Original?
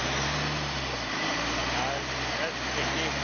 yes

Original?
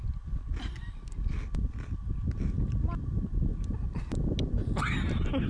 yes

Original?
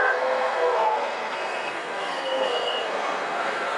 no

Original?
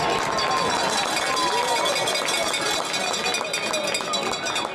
yes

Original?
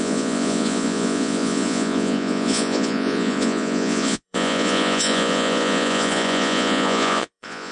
no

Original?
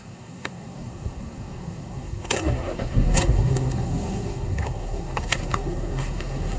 no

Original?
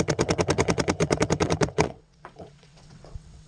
no